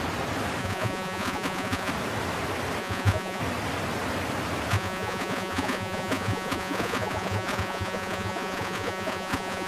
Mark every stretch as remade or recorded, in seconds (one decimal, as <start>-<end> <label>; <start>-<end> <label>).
0.0-0.6 recorded; 0.6-1.9 remade; 1.9-2.8 recorded; 2.8-3.4 remade; 3.4-4.7 recorded; 4.7-9.7 remade